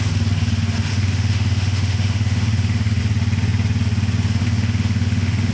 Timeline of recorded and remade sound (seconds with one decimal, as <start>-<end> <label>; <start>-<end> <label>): 0.0-0.9 recorded; 0.9-3.0 remade; 3.0-4.4 recorded; 4.4-5.5 remade